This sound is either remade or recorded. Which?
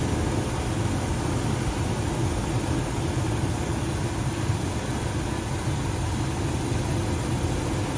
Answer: recorded